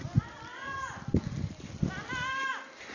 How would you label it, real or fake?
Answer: real